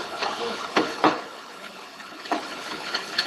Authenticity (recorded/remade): remade